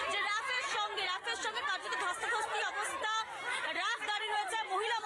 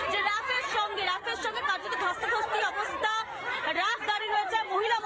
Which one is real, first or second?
first